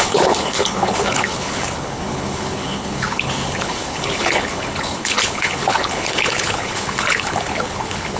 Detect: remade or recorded remade